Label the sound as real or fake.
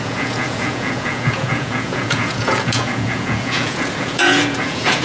fake